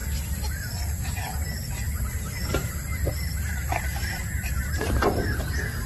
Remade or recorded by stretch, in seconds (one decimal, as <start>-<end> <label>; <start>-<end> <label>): 0.0-3.5 recorded; 3.5-5.9 remade